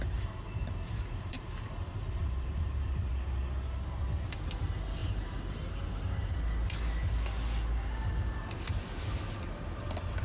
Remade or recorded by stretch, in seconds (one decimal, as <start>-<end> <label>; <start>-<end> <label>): 0.0-3.1 remade; 3.1-5.0 recorded; 5.0-6.4 remade; 6.4-10.2 recorded